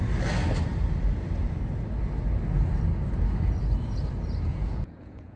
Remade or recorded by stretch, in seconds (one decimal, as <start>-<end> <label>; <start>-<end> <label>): 0.0-4.5 recorded; 4.5-5.4 remade